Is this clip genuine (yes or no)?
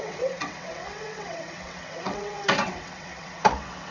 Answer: no